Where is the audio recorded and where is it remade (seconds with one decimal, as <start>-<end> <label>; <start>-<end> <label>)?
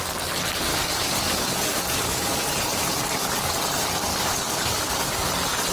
0.0-0.7 recorded; 0.7-2.3 remade; 2.3-4.1 recorded; 4.1-5.3 remade; 5.3-5.7 recorded